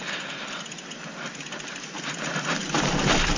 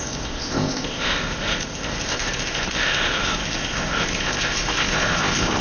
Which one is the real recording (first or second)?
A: first